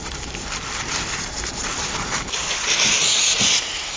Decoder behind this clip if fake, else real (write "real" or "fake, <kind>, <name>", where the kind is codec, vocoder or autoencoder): real